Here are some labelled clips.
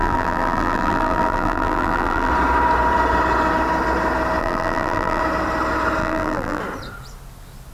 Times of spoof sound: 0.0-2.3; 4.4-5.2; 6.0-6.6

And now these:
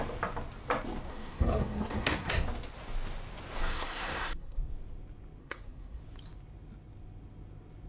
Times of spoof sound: 1.1-2.3; 3.6-4.6; 5.4-6.0

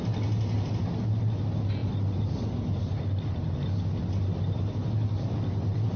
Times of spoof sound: none

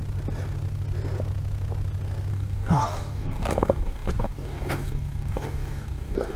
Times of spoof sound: 2.3-6.4

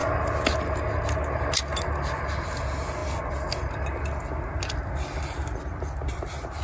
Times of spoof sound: none

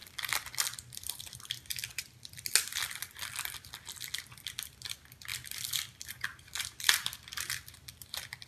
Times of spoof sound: 5.3-6.6

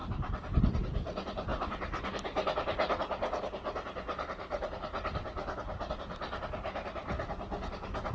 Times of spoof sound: none

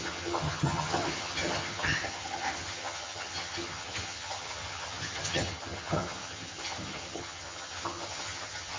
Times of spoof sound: 0.0-8.8